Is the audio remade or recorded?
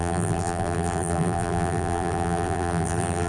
remade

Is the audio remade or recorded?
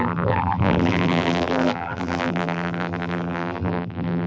remade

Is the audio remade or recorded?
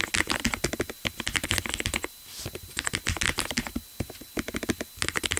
recorded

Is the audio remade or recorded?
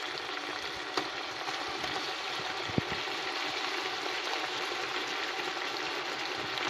recorded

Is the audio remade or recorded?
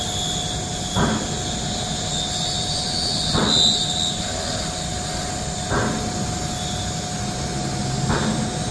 recorded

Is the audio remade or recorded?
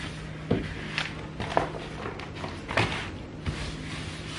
recorded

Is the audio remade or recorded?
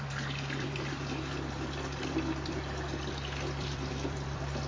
remade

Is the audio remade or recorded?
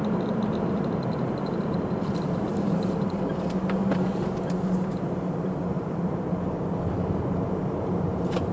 remade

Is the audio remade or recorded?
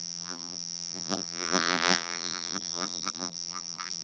remade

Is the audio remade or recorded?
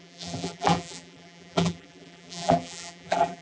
remade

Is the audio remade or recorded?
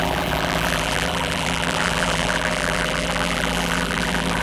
remade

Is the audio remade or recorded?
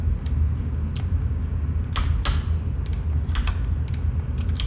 recorded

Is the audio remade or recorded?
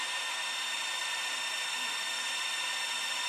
recorded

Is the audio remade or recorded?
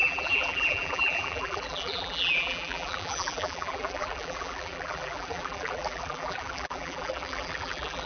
remade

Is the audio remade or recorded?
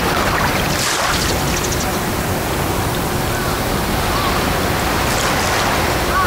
recorded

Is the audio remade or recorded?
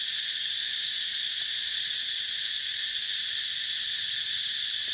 remade